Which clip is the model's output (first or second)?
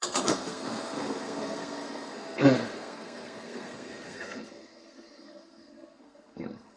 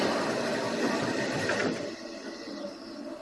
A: first